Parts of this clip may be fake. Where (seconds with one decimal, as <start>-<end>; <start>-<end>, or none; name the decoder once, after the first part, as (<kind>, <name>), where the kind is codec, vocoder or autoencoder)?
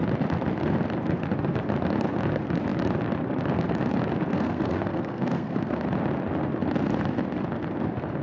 4.3-5.8 (codec, SNAC)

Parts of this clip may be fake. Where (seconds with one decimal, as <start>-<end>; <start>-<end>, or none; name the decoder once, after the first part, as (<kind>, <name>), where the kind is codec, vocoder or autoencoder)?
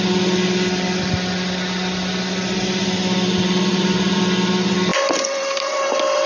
3.7-4.2 (vocoder, BigVGAN v2); 4.9-6.3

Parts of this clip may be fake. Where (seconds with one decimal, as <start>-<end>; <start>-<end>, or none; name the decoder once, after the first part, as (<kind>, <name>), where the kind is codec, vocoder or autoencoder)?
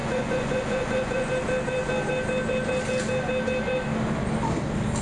0.0-1.3 (vocoder, Vocos)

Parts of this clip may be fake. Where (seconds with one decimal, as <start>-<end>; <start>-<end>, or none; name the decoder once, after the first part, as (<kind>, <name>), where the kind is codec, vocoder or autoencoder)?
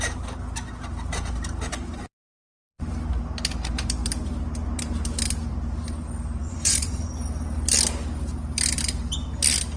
1.7-2.9 (vocoder, Vocos); 6.4-7.1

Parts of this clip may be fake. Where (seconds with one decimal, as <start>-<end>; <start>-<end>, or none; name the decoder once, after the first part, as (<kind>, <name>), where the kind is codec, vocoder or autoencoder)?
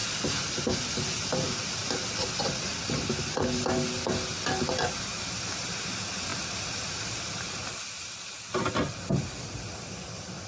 none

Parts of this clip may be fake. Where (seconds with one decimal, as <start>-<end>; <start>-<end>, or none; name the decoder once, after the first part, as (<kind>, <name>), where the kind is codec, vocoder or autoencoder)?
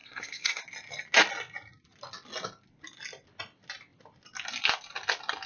0.0-0.6 (codec, SNAC)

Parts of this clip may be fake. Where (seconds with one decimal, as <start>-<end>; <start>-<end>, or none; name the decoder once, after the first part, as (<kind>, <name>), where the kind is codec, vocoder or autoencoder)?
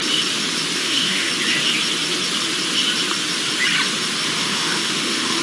0.8-1.3 (autoencoder, DAC-VAE); 4.4-5.4